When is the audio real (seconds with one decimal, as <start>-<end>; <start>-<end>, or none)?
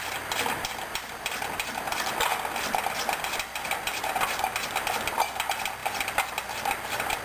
0.0-7.2